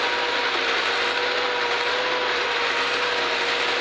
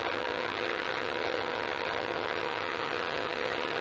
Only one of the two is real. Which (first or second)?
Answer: first